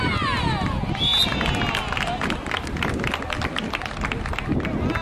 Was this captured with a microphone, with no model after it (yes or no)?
yes